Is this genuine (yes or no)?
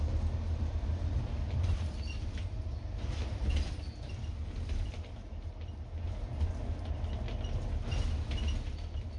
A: yes